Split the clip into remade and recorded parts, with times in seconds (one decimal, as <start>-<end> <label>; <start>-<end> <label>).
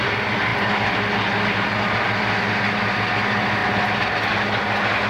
0.0-5.1 recorded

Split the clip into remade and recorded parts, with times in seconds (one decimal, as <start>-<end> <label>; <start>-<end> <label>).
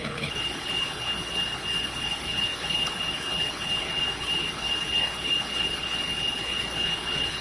0.0-7.4 remade